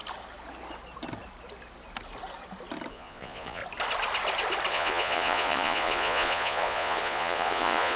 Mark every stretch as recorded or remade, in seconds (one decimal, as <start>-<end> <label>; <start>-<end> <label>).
0.0-2.9 recorded; 2.9-3.6 remade; 3.6-4.7 recorded; 4.7-8.0 remade